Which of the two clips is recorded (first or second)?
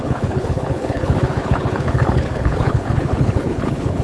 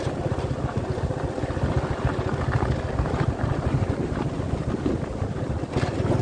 second